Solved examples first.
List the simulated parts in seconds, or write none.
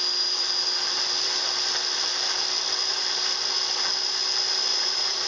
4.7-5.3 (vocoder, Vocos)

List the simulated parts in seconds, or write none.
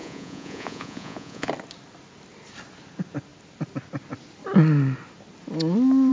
0.0-1.5 (vocoder, Vocos)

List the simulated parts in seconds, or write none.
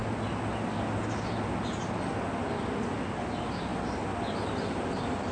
none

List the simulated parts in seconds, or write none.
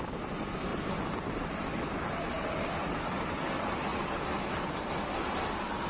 none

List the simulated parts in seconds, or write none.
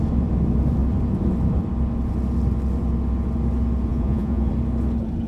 3.9-4.5 (vocoder, Vocos)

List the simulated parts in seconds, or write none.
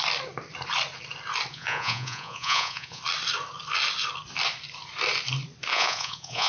1.5-3.0 (vocoder, Vocos); 5.7-6.5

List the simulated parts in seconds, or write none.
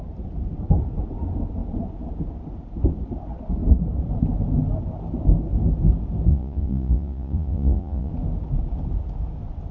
6.3-8.1 (vocoder, Vocos)